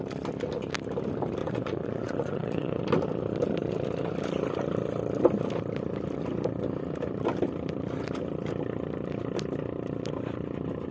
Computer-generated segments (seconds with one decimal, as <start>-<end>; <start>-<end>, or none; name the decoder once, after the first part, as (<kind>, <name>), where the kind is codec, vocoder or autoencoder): 1.4-2.8 (vocoder, Vocos)